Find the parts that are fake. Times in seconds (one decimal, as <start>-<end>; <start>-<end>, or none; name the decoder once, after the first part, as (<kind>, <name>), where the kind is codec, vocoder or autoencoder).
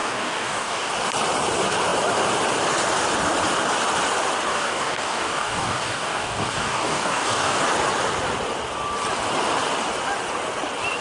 0.0-0.9 (codec, DAC); 4.5-7.6